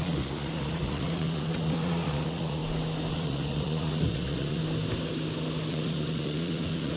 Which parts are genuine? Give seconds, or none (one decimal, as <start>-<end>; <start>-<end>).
2.6-3.1; 4.6-5.7